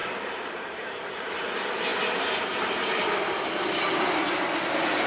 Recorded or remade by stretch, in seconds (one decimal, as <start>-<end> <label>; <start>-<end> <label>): 0.0-1.3 remade; 1.3-5.1 recorded